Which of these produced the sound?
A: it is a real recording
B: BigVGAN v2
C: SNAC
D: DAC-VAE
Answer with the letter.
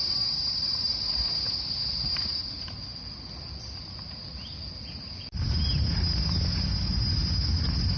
A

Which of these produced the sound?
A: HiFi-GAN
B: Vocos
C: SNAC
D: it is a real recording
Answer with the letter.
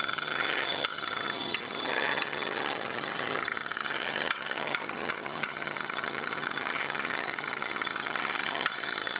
A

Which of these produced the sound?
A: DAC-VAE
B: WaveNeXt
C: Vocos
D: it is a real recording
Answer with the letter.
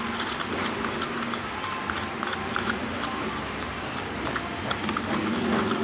D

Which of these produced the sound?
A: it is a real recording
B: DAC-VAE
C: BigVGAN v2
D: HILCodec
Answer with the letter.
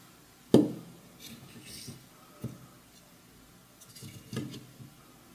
A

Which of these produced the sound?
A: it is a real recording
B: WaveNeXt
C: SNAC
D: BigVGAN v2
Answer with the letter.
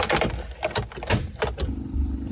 A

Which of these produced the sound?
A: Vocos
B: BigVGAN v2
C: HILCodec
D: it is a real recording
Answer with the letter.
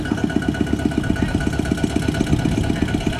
D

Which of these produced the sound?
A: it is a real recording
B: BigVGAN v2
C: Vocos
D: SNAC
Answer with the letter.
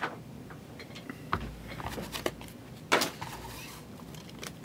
A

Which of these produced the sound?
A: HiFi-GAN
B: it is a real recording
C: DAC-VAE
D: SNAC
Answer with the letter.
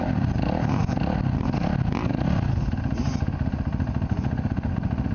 B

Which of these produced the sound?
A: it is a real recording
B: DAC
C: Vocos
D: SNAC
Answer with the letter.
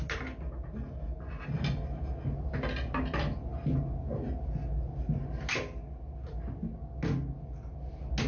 A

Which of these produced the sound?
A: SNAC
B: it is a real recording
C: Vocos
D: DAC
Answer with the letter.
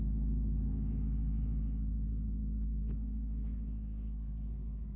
A